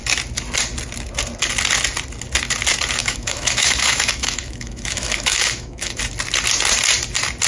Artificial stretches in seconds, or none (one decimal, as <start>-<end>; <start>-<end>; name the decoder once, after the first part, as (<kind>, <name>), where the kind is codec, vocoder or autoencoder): 3.0-6.0 (autoencoder, DAC-VAE)